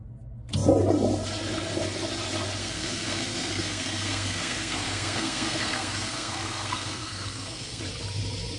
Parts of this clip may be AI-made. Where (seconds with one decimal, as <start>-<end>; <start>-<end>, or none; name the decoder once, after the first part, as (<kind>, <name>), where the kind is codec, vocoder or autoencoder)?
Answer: 2.6-7.8 (codec, SNAC)